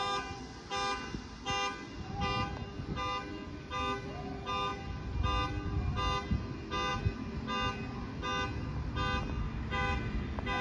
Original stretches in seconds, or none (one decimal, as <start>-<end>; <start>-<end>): 0.0-10.6